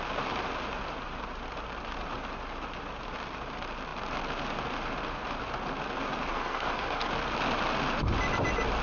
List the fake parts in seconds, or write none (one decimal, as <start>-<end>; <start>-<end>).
6.3-7.1